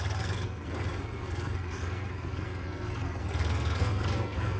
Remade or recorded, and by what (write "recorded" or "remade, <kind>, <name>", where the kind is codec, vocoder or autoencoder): remade, codec, SNAC